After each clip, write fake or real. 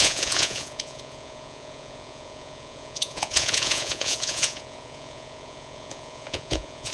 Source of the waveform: fake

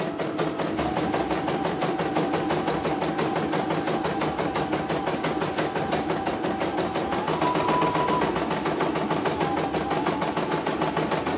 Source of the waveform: real